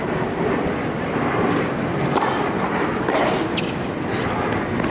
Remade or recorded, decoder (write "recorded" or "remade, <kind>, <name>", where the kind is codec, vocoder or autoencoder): recorded